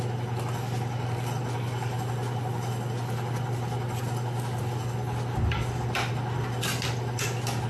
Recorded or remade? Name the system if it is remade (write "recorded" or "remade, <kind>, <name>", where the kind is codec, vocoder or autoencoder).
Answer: recorded